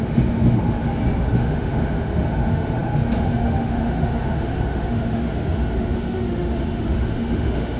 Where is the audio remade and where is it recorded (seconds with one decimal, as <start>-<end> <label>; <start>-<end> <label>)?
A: 0.0-0.8 remade; 0.8-1.4 recorded; 1.4-7.8 remade

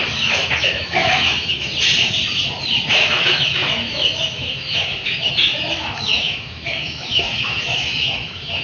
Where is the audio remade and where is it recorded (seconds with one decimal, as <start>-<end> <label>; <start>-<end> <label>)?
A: 0.0-1.7 remade; 1.7-2.9 recorded; 2.9-8.6 remade

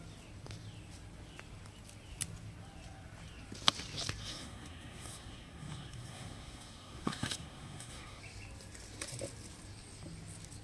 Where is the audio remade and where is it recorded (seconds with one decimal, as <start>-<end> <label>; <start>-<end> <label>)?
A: 0.0-4.2 recorded; 4.2-8.2 remade; 8.2-10.6 recorded